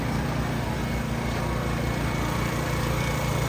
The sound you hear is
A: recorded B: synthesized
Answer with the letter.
A